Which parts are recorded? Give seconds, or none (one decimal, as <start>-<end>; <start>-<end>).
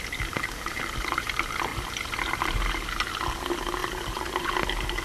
0.0-1.7; 2.7-5.0